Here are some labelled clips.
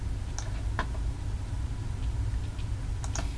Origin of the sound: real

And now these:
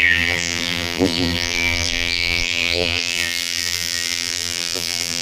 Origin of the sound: fake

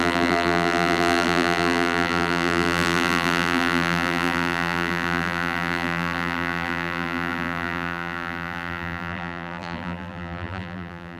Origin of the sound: fake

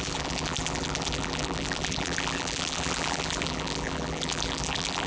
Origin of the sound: fake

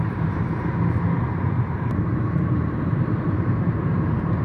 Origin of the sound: fake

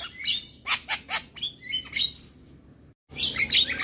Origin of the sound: real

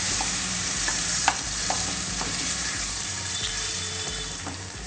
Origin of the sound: fake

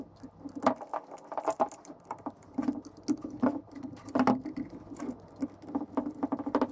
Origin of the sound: real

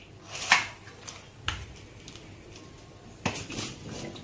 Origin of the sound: real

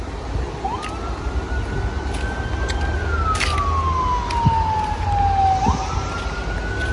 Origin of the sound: real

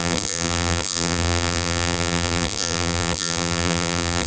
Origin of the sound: fake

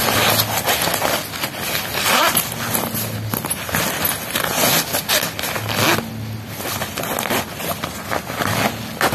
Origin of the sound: real